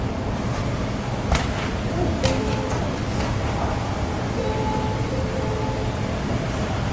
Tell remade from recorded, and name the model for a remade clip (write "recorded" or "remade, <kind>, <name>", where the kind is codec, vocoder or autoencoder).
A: recorded